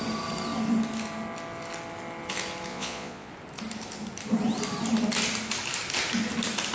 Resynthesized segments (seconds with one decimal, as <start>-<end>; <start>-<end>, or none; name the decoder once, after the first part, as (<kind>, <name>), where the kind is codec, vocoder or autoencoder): 2.7-3.3 (vocoder, Vocos)